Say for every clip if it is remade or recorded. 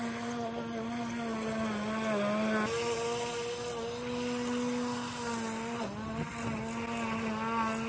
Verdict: recorded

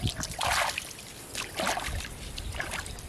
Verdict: remade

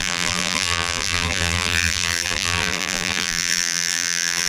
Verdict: remade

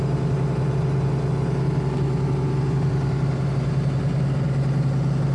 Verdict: recorded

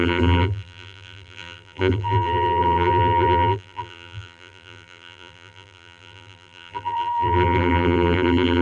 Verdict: remade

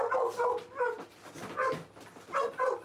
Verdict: recorded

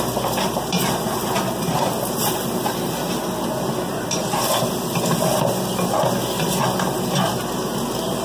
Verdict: recorded